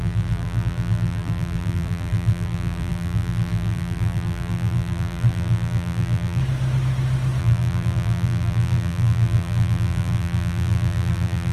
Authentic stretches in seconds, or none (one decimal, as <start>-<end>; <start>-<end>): 6.4-7.4